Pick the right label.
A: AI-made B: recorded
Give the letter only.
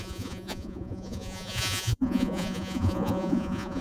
A